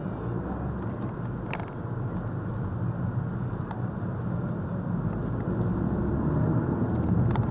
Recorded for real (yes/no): yes